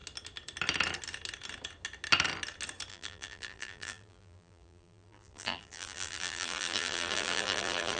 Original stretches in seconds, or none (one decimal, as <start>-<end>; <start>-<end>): 0.0-2.9

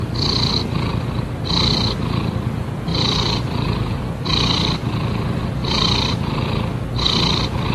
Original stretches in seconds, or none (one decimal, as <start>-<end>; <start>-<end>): 0.0-2.9; 4.0-5.6; 6.3-7.7